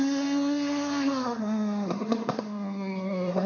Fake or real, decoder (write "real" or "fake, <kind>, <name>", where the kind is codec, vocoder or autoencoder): fake, codec, SNAC